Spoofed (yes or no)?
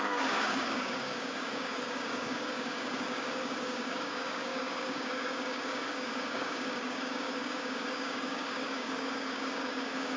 yes